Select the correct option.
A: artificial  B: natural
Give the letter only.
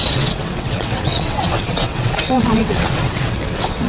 A